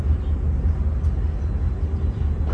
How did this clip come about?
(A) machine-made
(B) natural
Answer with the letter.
B